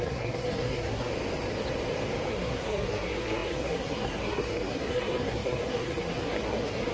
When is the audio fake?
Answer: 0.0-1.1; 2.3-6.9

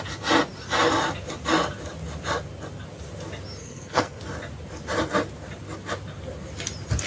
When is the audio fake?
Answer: 3.6-4.2

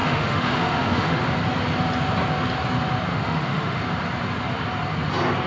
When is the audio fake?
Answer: 0.0-1.2; 3.1-3.8

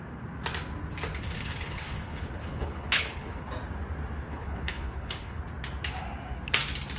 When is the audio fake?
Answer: 1.2-3.5; 4.3-5.4

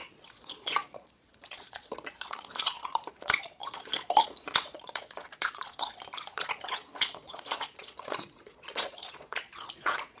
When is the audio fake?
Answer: 0.0-10.2

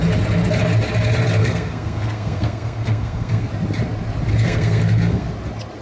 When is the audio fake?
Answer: 1.4-3.5; 4.3-5.3

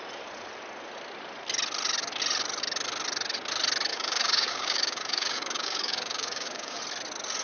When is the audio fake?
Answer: 3.9-6.8